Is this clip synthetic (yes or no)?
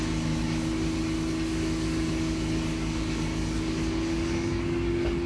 yes